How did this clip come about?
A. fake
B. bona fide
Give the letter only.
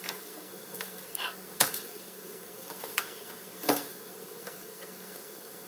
A